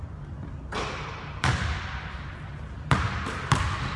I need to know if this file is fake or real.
real